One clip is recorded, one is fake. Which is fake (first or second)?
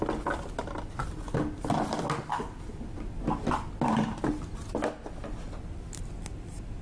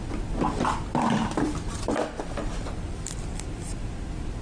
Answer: second